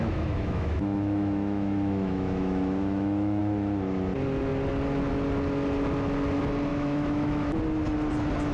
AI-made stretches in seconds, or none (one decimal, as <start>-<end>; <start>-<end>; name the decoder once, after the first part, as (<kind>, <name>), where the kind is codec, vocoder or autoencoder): 0.0-3.4 (autoencoder, DAC-VAE); 6.7-7.6